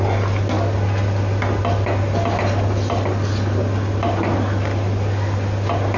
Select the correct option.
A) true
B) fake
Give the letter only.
A